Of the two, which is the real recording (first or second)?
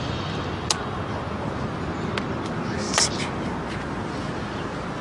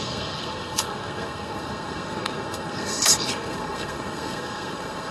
first